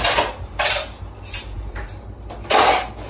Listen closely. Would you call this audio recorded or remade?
recorded